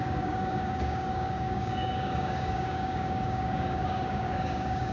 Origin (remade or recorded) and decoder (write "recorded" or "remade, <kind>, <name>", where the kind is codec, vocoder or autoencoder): remade, codec, DAC